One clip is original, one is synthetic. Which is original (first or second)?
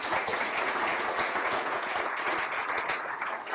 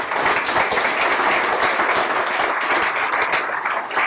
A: second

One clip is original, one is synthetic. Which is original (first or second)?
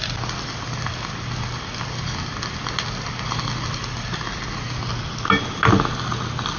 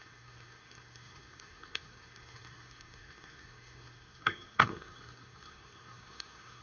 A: first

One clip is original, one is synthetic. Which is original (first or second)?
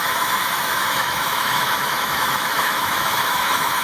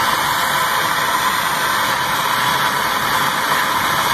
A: second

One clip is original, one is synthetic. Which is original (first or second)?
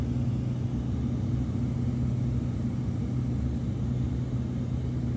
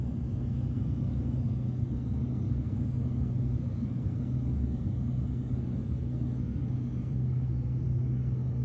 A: first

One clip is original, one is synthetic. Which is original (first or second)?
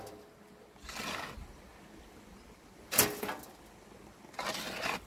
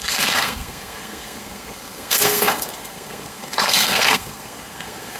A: first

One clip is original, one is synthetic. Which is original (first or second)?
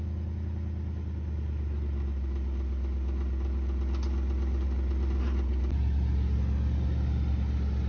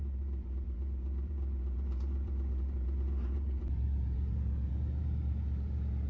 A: first